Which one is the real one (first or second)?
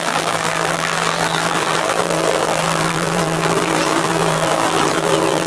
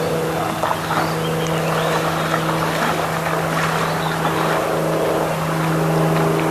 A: second